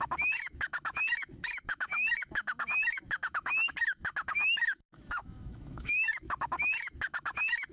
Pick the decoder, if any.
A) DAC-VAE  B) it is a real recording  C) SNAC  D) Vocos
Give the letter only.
A